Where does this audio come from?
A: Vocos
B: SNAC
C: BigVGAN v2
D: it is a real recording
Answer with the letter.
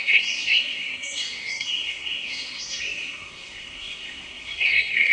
B